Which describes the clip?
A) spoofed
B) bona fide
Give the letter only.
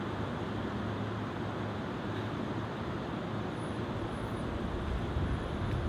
B